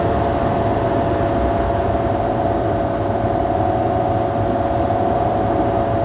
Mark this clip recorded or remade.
recorded